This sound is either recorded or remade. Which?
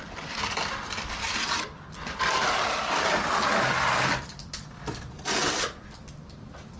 remade